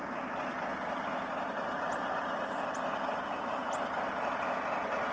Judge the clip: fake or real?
real